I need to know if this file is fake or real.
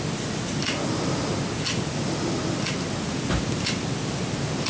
real